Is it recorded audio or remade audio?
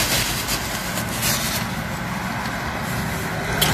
recorded